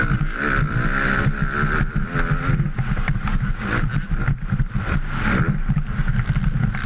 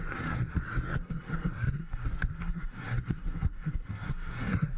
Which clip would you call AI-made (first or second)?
second